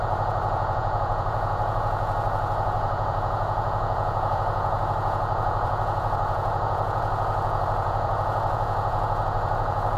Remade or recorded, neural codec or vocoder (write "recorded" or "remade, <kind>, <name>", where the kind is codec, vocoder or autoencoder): remade, vocoder, Vocos